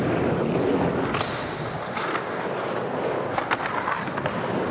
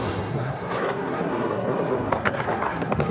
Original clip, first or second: first